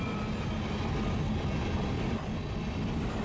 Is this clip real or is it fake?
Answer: real